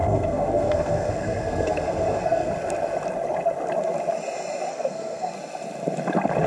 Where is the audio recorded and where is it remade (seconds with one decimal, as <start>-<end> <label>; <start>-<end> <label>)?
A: 0.0-2.5 remade; 2.5-4.7 recorded; 4.7-5.3 remade; 5.3-6.5 recorded